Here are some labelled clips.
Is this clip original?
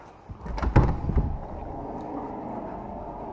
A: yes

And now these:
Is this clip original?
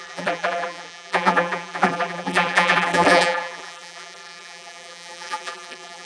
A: no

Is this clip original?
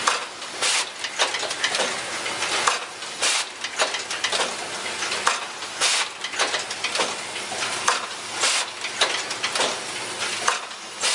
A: yes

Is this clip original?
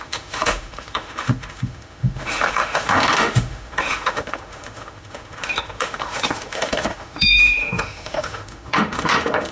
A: no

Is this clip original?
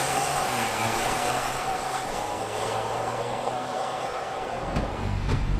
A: no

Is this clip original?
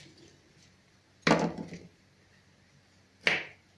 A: yes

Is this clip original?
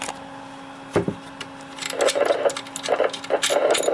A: yes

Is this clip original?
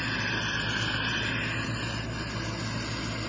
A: yes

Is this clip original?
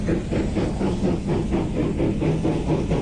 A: yes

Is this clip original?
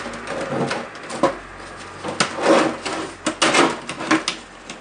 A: yes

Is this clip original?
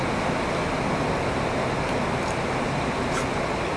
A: yes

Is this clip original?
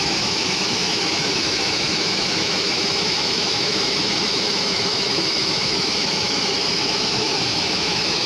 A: no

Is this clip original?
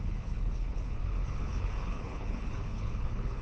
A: no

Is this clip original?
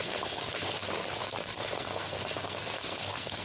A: no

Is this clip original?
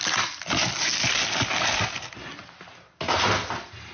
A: yes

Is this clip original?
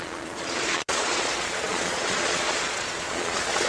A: no